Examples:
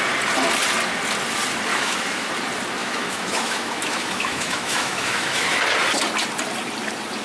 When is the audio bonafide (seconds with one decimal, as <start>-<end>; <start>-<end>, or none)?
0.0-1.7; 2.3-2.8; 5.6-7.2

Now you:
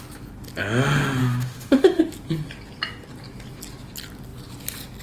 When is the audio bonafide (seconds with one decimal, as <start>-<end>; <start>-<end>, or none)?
0.0-1.2; 2.0-5.0

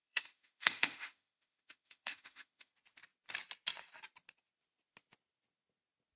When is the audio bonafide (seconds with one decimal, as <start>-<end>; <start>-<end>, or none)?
2.7-6.2

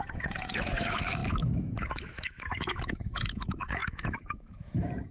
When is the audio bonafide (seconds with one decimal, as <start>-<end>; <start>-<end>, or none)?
none

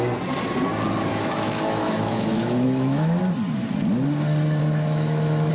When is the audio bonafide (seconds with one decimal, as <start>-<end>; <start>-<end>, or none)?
0.0-1.1; 3.2-4.6